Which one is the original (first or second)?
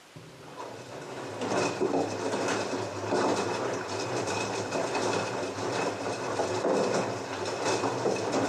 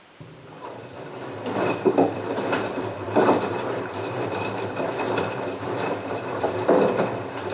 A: first